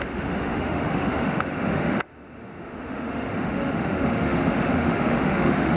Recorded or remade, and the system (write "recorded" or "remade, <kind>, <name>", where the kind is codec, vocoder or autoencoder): remade, autoencoder, DAC-VAE